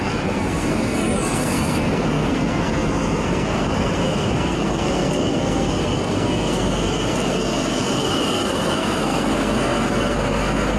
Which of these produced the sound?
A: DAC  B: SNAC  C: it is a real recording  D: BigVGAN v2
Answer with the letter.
B